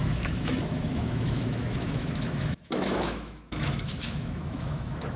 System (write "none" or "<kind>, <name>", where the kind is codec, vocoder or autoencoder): autoencoder, DAC-VAE